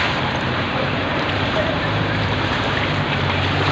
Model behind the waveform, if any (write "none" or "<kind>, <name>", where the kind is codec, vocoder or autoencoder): vocoder, BigVGAN v2